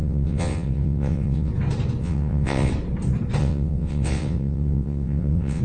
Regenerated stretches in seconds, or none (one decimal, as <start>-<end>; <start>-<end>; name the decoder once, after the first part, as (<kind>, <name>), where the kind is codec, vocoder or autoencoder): 0.0-1.5 (vocoder, WaveNeXt); 2.0-2.7; 3.4-5.6